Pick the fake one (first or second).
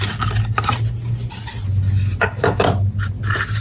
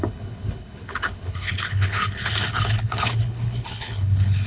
second